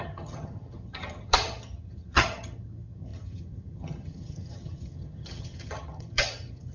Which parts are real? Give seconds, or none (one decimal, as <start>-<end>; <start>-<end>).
none